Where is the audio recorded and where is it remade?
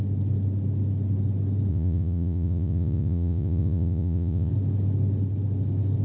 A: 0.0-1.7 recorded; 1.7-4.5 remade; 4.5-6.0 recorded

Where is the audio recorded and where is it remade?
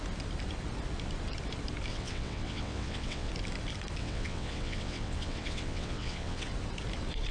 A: 0.0-1.9 recorded; 1.9-3.3 remade; 3.3-4.0 recorded; 4.0-6.5 remade; 6.5-7.3 recorded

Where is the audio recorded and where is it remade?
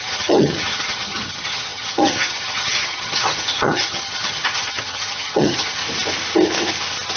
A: 0.0-5.8 remade; 5.8-7.2 recorded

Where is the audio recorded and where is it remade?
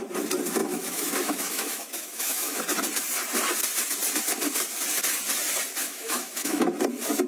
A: 0.0-0.6 recorded; 0.6-2.6 remade; 2.6-5.8 recorded; 5.8-6.6 remade; 6.6-7.3 recorded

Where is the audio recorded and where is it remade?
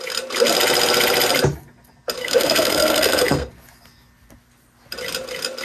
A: 0.0-2.2 recorded; 2.2-3.5 remade; 3.5-5.6 recorded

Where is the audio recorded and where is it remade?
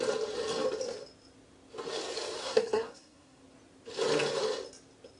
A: 0.0-2.4 recorded; 2.4-3.4 remade; 3.4-5.2 recorded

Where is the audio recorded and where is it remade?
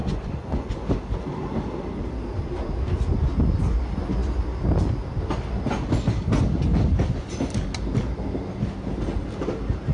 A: 0.0-0.7 remade; 0.7-9.9 recorded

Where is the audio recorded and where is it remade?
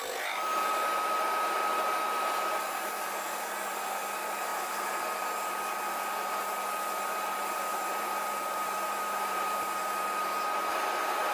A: 0.0-7.7 recorded; 7.7-9.6 remade; 9.6-11.3 recorded